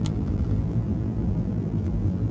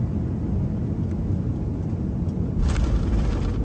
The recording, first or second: second